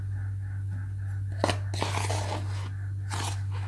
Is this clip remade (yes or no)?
no